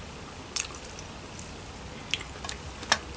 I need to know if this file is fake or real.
real